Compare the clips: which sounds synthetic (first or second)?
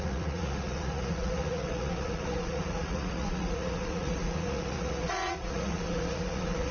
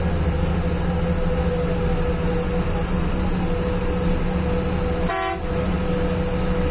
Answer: first